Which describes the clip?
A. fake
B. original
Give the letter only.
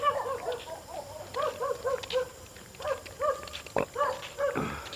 B